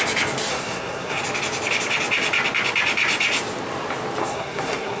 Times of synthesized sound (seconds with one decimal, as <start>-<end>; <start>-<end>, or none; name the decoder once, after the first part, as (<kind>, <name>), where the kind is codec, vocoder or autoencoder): 0.5-1.2 (codec, SNAC); 4.2-5.0